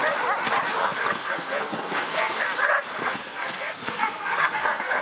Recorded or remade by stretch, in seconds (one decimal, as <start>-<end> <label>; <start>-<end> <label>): 0.0-0.8 recorded; 0.8-2.4 remade; 2.4-2.9 recorded; 2.9-5.0 remade